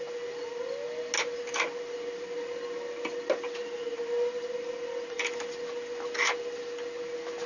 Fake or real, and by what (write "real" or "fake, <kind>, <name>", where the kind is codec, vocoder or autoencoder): real